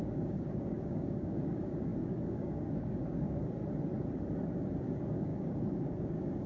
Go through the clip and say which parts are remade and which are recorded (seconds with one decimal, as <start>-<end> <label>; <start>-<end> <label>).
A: 0.0-3.6 remade; 3.6-4.8 recorded; 4.8-6.5 remade